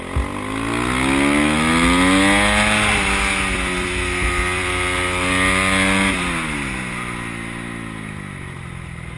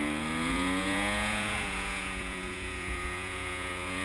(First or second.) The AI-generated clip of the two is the second